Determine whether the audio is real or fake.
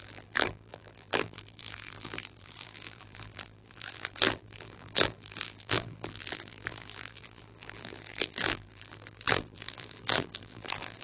fake